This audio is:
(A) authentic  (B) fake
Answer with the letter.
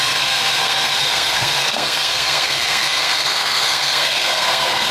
B